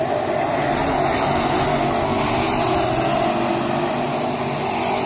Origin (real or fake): real